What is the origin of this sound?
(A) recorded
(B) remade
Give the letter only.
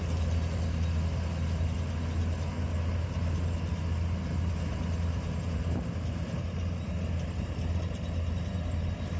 A